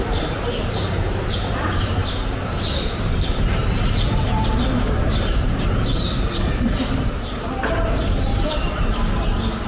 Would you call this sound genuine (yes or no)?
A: no